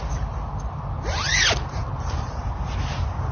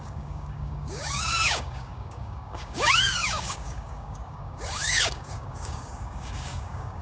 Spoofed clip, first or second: second